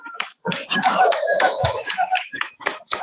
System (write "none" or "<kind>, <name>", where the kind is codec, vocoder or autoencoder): autoencoder, DAC-VAE